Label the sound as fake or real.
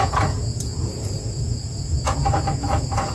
fake